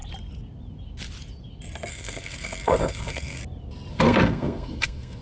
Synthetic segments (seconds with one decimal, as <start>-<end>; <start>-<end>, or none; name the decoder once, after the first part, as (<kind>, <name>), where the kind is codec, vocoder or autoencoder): 1.9-3.4 (codec, SNAC); 3.9-5.2